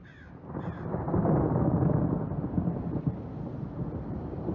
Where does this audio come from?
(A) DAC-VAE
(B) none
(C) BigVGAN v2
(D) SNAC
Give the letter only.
B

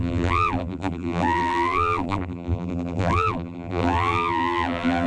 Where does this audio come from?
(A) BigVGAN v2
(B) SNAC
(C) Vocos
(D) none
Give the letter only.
A